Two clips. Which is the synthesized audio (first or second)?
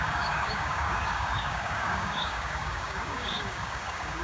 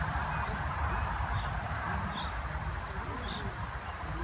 first